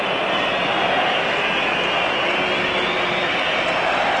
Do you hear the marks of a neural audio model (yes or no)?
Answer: no